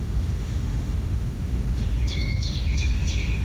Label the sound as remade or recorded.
remade